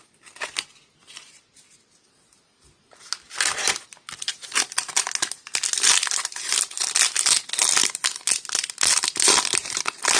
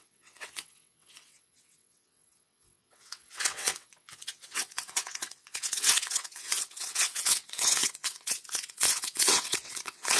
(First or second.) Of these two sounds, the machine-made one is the second